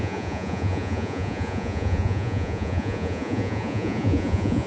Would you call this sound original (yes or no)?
no